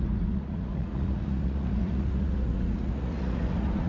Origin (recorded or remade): remade